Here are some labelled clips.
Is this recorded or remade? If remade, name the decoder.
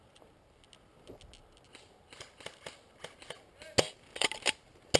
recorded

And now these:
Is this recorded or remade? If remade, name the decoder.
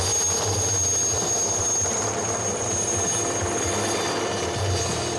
recorded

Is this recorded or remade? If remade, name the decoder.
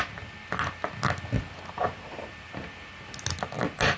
recorded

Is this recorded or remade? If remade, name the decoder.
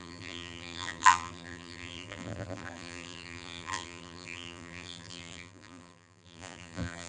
remade, vocoder, BigVGAN v2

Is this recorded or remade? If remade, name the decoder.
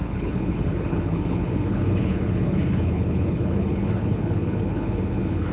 remade, codec, HILCodec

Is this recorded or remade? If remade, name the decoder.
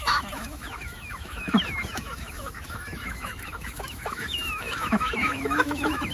remade, autoencoder, DAC-VAE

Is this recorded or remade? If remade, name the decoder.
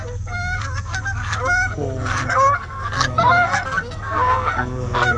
remade, codec, SNAC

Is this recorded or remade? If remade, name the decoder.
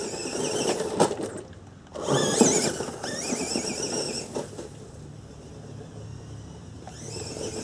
recorded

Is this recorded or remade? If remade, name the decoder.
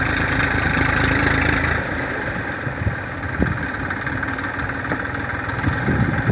recorded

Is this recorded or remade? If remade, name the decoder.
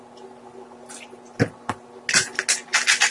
recorded